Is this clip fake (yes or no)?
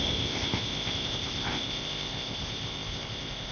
yes